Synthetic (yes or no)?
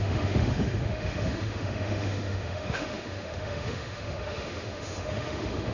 yes